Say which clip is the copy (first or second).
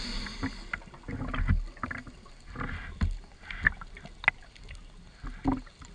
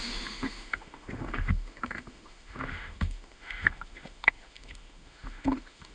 second